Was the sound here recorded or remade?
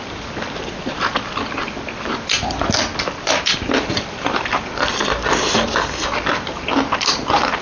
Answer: remade